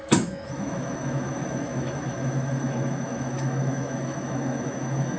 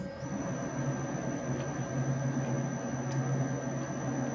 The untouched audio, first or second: second